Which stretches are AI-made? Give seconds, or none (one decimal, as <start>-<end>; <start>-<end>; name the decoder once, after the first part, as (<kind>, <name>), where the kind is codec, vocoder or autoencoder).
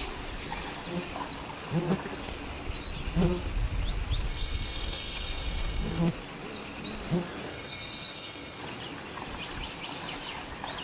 4.3-6.0 (codec, SNAC); 7.5-8.6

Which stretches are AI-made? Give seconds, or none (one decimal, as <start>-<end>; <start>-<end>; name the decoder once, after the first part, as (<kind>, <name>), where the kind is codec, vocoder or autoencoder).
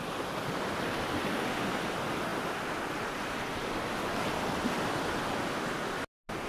none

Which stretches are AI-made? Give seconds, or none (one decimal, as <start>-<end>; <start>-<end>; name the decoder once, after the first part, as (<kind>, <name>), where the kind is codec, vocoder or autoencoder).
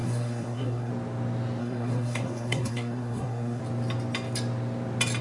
0.0-0.9 (codec, SNAC); 1.6-3.6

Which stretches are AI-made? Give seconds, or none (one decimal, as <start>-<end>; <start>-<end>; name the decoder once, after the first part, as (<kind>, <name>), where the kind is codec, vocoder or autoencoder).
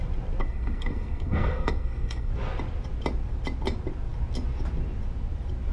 0.4-2.3 (codec, SNAC)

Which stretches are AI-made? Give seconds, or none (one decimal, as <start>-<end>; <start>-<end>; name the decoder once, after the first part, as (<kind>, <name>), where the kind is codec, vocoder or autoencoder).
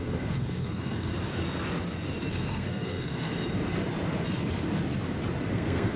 0.0-1.1 (codec, SNAC); 2.3-3.3; 5.5-6.0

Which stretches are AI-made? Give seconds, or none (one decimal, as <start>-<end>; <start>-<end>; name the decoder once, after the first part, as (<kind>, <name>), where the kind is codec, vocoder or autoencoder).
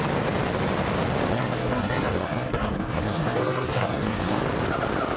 1.3-4.4 (codec, SNAC)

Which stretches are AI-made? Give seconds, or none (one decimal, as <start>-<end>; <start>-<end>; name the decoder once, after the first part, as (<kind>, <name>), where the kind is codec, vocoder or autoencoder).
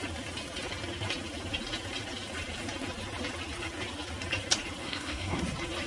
4.8-5.4 (codec, SNAC)